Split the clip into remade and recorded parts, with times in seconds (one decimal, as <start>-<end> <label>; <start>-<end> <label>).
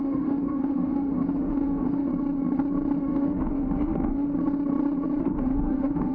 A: 0.0-2.1 remade; 2.1-3.0 recorded; 3.0-4.3 remade; 4.3-5.2 recorded; 5.2-6.1 remade